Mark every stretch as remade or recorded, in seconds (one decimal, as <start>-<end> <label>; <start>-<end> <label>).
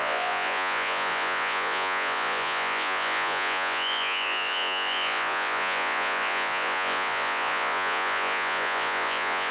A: 0.0-9.5 remade